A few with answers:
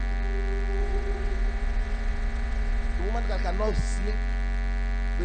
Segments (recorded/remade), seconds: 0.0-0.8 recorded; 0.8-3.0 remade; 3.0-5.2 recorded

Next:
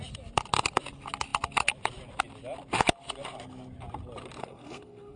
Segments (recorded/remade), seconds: 0.0-4.4 recorded; 4.4-5.2 remade

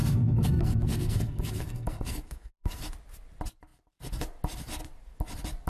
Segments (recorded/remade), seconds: 0.0-2.8 remade; 2.8-5.7 recorded

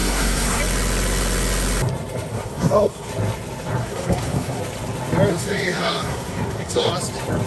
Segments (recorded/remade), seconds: 0.0-0.6 remade; 0.6-2.3 recorded; 2.3-3.1 remade; 3.1-3.8 recorded; 3.8-4.6 remade; 4.6-5.3 recorded; 5.3-6.9 remade; 6.9-7.5 recorded

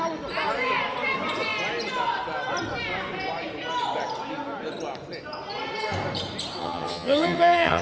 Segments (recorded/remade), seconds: 0.0-6.6 recorded; 6.6-7.8 remade